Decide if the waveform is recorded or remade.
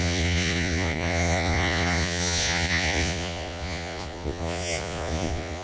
remade